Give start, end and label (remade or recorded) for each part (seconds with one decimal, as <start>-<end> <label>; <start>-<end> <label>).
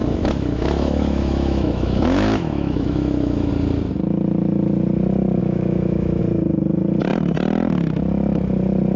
0.0-3.5 remade; 3.5-5.4 recorded; 5.4-6.2 remade; 6.2-9.0 recorded